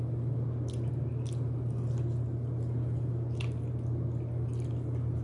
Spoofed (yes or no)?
no